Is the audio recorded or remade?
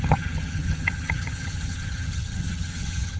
remade